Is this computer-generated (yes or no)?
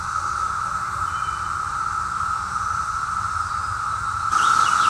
no